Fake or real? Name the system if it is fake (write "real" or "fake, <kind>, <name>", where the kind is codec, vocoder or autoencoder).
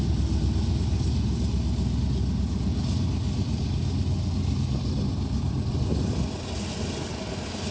real